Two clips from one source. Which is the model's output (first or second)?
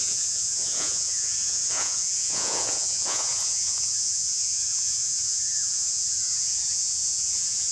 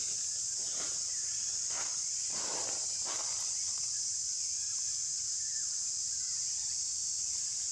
first